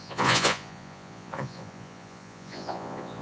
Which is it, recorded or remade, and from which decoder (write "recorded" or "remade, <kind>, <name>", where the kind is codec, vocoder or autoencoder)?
remade, vocoder, Vocos